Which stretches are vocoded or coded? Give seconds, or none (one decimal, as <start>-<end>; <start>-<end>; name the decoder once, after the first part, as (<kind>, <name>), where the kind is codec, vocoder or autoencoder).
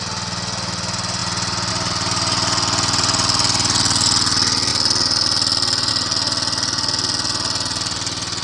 none